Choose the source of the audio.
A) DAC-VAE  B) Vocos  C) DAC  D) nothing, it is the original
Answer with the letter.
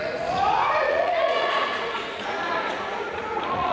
B